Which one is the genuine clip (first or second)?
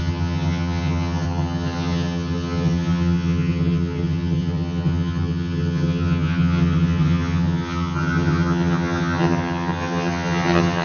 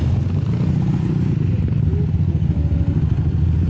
second